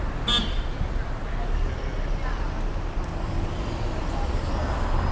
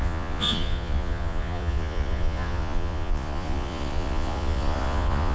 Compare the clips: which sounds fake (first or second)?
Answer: second